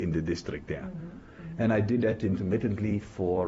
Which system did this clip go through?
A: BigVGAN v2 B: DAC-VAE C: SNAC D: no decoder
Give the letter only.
A